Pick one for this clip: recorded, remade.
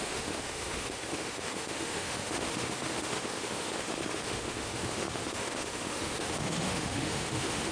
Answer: remade